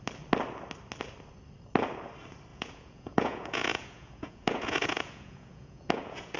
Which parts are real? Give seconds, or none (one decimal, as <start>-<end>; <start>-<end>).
0.0-2.5